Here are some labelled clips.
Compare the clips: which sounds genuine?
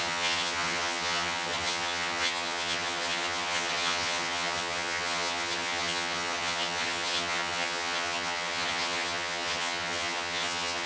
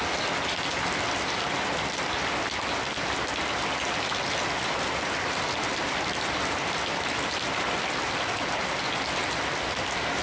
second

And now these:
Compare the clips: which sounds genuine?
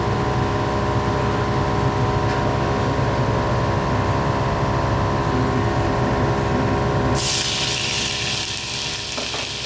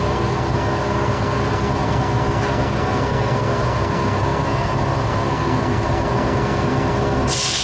first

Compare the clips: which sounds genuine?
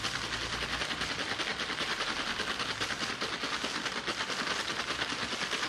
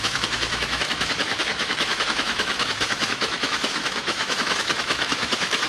first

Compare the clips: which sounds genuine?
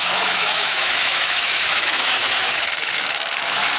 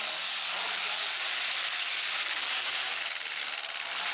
second